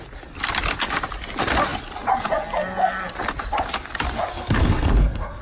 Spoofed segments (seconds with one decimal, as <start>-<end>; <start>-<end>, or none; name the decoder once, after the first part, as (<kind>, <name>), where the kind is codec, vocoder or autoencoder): 4.3-5.4 (codec, SNAC)